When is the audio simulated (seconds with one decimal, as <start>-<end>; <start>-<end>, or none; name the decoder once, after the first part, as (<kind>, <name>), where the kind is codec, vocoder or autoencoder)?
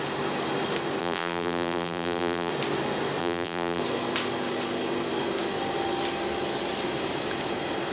1.0-2.5 (vocoder, BigVGAN v2); 3.2-3.8